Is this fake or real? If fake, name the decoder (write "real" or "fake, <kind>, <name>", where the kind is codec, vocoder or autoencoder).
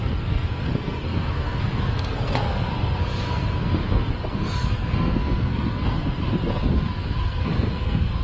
fake, codec, SNAC